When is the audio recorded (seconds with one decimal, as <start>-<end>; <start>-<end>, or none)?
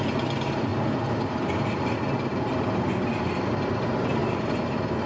0.7-3.8